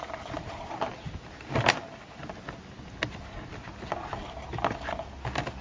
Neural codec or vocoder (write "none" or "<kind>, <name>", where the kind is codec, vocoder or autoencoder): none